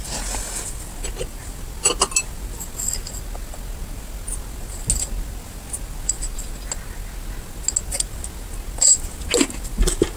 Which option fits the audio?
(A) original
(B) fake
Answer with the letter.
A